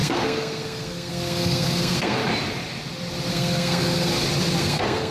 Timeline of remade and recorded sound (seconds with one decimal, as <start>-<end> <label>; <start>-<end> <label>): 0.0-2.2 remade; 2.2-3.3 recorded; 3.3-4.1 remade; 4.1-4.6 recorded; 4.6-5.1 remade